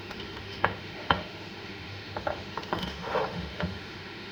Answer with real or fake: fake